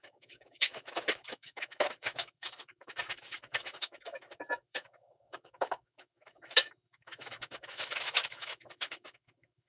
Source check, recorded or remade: remade